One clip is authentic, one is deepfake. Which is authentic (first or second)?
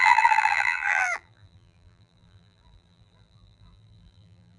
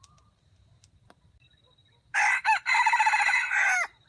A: second